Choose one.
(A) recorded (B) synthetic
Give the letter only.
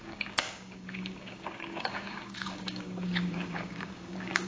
B